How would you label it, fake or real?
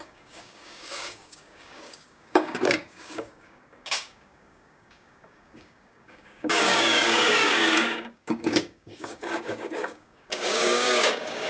fake